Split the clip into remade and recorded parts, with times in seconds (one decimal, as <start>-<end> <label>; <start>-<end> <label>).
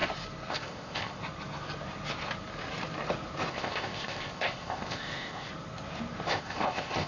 0.0-0.5 recorded; 0.5-1.2 remade; 1.2-3.5 recorded; 3.5-5.5 remade; 5.5-6.3 recorded; 6.3-7.1 remade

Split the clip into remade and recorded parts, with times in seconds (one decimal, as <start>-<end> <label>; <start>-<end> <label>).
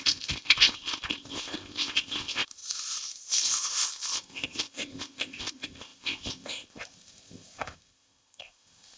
0.0-9.0 remade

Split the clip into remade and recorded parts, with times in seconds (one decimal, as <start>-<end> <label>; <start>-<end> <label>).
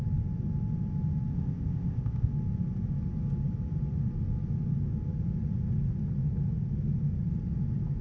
0.0-1.3 recorded; 1.3-2.3 remade; 2.3-8.0 recorded